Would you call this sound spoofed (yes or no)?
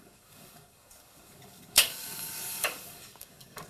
yes